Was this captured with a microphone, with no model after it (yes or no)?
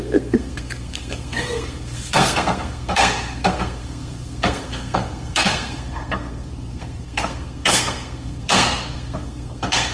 no